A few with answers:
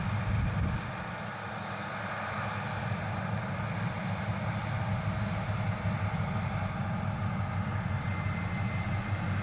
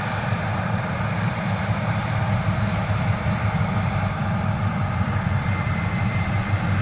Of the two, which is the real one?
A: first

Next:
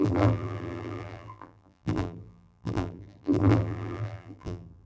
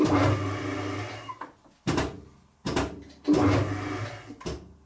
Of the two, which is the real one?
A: second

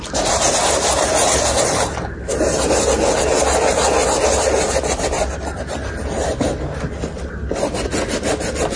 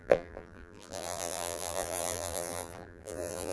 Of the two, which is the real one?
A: first